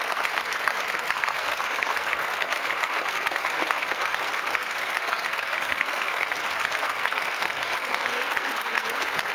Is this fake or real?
fake